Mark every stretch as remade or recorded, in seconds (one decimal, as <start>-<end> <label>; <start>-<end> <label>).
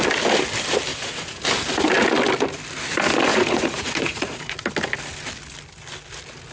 0.0-0.9 recorded; 0.9-1.4 remade; 1.4-3.3 recorded; 3.3-4.7 remade; 4.7-6.5 recorded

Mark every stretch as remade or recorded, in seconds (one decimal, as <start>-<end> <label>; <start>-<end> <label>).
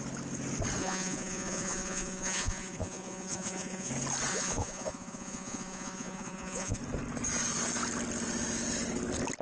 0.0-0.8 recorded; 0.8-3.9 remade; 3.9-4.3 recorded; 4.3-6.8 remade; 6.8-9.4 recorded